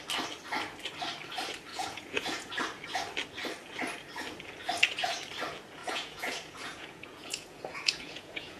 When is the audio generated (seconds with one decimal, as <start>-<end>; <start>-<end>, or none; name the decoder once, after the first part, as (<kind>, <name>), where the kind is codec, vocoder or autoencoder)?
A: 1.7-2.5 (vocoder, Vocos); 5.8-8.6